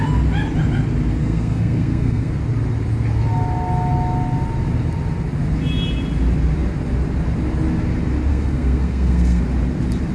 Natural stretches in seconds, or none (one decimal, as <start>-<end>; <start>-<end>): 0.0-1.2; 2.3-8.3; 9.4-10.1